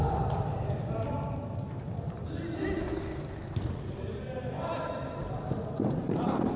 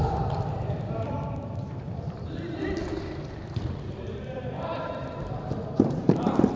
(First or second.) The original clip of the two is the first